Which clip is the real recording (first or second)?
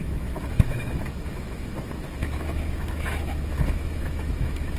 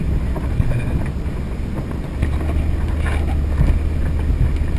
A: second